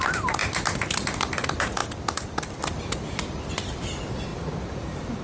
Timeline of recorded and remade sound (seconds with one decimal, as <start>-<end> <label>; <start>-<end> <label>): 0.0-0.4 recorded; 0.4-1.4 remade; 1.4-1.8 recorded; 1.8-2.6 remade; 2.6-5.2 recorded